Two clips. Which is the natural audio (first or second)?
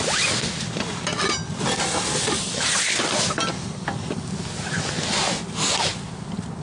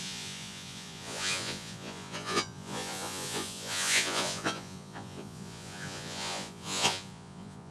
first